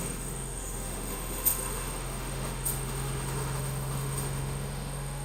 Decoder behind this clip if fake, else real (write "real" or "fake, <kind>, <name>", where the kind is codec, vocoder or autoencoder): fake, autoencoder, DAC-VAE